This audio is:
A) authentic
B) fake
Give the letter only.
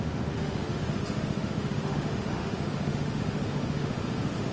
B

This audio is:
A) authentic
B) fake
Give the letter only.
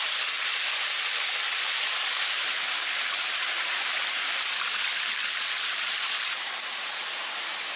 A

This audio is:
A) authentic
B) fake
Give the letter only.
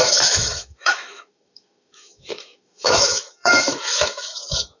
B